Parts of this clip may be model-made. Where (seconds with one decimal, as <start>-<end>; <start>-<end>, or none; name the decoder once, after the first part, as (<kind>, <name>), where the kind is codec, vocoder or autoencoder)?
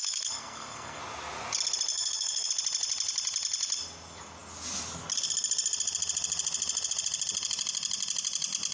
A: 0.0-1.0 (codec, SNAC); 1.9-2.5